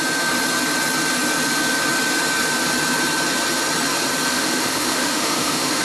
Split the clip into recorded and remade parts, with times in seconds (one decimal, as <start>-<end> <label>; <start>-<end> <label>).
0.0-4.3 recorded; 4.3-5.8 remade